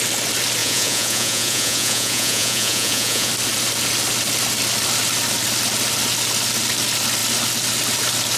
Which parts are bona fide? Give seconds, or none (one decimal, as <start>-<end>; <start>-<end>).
0.0-0.6; 3.3-8.4